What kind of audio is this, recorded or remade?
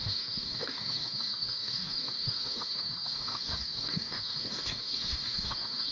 remade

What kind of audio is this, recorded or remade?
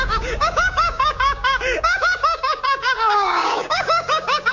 remade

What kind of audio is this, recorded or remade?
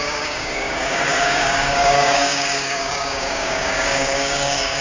remade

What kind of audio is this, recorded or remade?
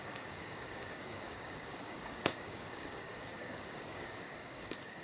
remade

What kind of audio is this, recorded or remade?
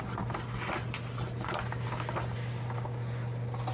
recorded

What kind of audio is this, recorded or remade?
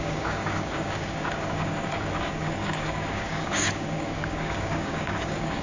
remade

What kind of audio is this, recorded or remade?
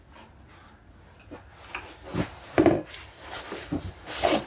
recorded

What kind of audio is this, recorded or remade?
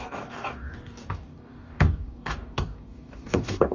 remade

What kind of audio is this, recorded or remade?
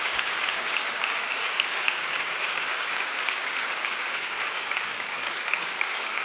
remade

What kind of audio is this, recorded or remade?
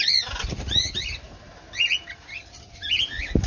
recorded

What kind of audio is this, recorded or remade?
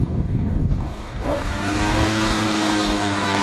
remade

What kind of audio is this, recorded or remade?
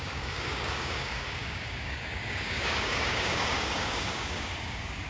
remade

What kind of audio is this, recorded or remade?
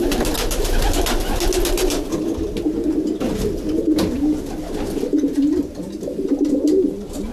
recorded